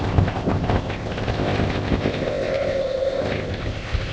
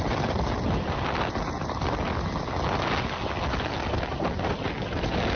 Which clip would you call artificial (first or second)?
first